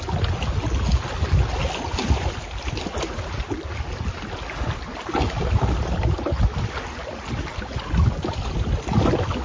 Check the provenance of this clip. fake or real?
real